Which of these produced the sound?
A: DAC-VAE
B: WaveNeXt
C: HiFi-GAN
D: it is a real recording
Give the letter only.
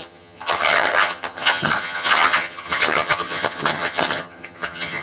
C